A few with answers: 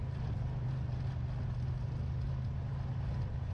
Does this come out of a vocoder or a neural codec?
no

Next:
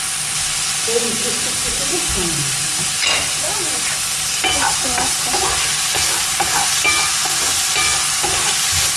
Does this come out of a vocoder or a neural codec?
no